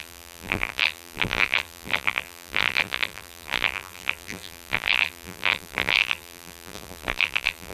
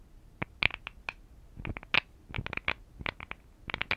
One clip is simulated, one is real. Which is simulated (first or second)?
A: first